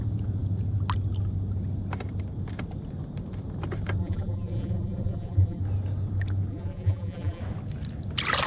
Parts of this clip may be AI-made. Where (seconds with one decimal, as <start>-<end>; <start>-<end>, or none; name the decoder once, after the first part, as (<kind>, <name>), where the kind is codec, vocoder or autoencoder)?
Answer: 4.0-5.6 (vocoder, BigVGAN v2); 6.5-7.4

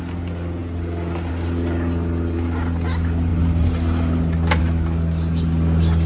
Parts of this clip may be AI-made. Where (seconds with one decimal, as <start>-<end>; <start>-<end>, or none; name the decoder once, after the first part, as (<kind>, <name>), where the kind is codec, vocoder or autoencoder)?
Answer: none

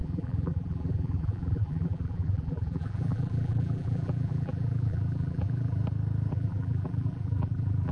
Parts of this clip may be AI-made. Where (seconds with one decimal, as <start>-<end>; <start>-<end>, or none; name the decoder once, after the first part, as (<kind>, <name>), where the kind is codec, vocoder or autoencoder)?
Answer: 0.0-5.8 (vocoder, BigVGAN v2); 6.3-7.9